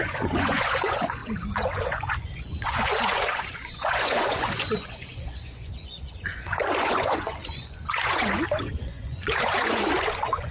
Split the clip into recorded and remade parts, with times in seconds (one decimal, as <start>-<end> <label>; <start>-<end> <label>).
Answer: 0.0-10.5 remade